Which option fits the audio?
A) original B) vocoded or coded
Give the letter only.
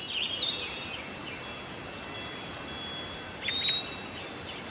A